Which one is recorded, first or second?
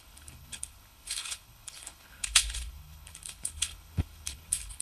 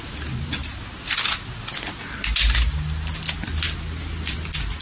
second